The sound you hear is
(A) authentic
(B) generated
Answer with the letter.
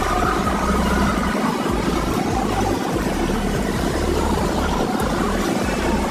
B